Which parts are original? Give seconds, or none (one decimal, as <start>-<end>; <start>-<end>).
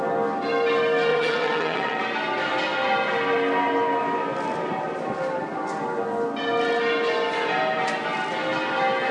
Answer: 0.0-1.1; 2.0-9.1